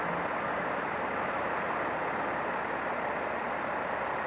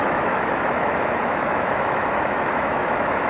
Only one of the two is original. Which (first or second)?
first